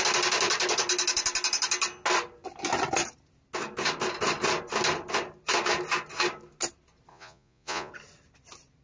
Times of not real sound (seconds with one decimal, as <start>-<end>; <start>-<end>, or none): 7.1-7.9